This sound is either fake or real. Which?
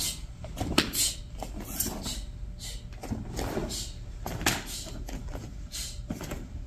real